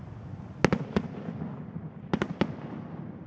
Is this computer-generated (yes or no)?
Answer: no